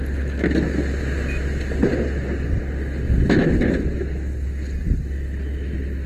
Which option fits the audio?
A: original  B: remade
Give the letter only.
A